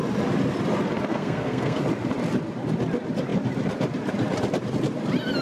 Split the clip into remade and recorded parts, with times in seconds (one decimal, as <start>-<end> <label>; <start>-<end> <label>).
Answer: 0.0-1.1 recorded; 1.1-1.8 remade; 1.8-5.4 recorded